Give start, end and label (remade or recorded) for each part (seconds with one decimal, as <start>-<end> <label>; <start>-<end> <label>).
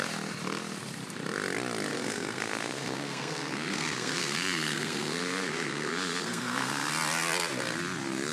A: 0.0-1.9 recorded; 1.9-6.9 remade; 6.9-8.3 recorded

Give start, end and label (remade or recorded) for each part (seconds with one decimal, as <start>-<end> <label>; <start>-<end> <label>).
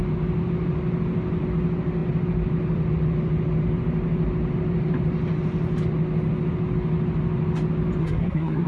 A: 0.0-8.0 recorded; 8.0-8.7 remade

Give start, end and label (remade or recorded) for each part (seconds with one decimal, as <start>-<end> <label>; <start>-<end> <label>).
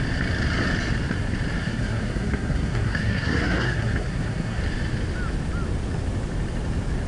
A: 0.0-1.6 recorded; 1.6-4.6 remade; 4.6-7.1 recorded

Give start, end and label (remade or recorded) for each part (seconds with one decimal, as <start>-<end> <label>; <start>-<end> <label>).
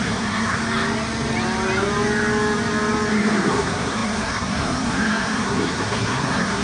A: 0.0-0.6 remade; 0.6-3.1 recorded; 3.1-6.6 remade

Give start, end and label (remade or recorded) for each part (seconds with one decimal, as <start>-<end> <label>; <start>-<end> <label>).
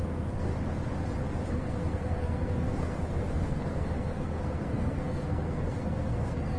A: 0.0-0.5 remade; 0.5-1.5 recorded; 1.5-6.6 remade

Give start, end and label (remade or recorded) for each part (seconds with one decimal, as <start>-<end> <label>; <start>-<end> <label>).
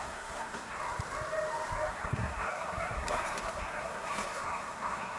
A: 0.0-0.8 remade; 0.8-1.9 recorded; 1.9-5.2 remade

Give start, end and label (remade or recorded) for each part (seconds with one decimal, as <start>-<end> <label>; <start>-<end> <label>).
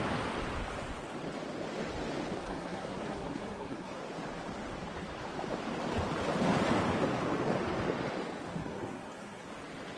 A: 0.0-2.4 recorded; 2.4-4.0 remade; 4.0-8.6 recorded; 8.6-9.5 remade; 9.5-10.0 recorded